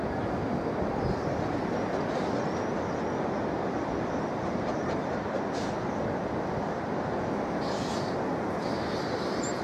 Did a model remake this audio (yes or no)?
no